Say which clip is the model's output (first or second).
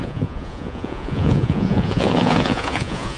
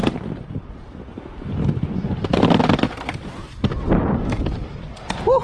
first